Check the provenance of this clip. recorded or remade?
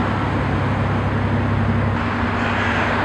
recorded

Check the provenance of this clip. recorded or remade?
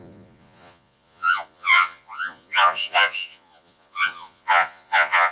remade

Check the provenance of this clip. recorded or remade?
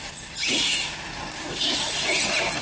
recorded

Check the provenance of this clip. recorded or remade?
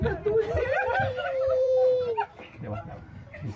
remade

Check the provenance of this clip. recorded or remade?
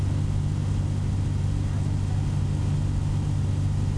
recorded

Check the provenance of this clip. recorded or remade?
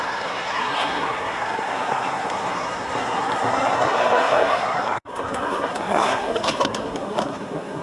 remade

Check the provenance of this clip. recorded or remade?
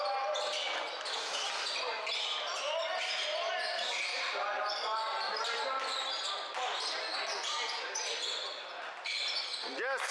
recorded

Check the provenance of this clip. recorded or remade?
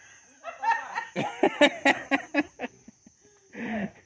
recorded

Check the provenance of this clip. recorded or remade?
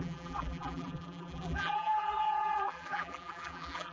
remade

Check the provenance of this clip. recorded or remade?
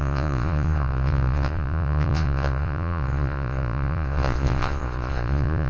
remade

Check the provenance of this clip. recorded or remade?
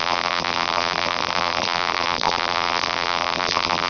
remade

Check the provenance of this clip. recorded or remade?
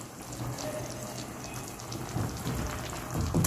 recorded